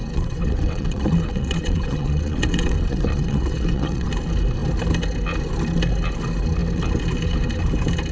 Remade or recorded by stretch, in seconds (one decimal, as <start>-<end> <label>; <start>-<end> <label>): 0.0-4.1 remade; 4.1-8.1 recorded